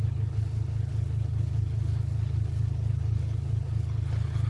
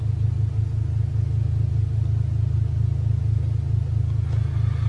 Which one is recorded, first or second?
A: second